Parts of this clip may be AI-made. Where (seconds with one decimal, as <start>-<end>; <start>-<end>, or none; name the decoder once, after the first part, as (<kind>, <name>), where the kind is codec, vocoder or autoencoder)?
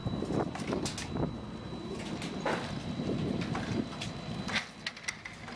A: none